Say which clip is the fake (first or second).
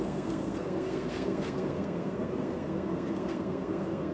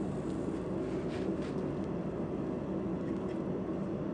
first